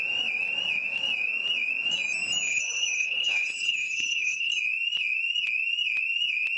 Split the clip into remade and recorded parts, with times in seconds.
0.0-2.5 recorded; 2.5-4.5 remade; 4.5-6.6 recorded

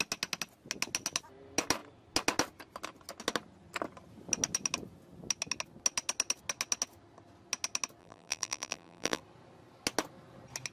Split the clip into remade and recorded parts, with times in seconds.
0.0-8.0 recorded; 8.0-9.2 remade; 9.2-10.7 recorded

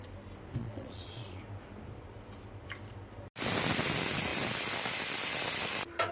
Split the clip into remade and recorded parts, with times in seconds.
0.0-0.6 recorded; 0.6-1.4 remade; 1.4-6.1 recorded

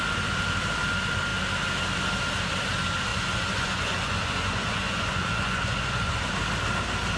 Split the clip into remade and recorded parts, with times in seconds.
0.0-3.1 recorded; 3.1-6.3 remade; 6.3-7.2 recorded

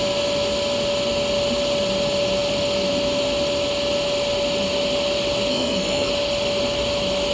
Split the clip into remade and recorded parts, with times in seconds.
0.0-5.5 recorded; 5.5-6.1 remade; 6.1-7.3 recorded

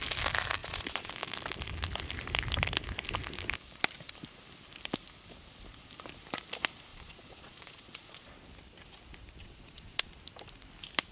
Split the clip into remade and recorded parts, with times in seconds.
0.0-0.6 recorded; 0.6-1.1 remade; 1.1-6.9 recorded; 6.9-8.3 remade; 8.3-9.4 recorded; 9.4-10.1 remade; 10.1-11.1 recorded

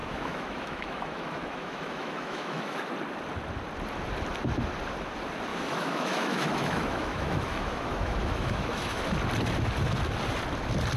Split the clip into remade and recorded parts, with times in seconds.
0.0-2.9 remade; 2.9-5.5 recorded; 5.5-9.0 remade; 9.0-11.0 recorded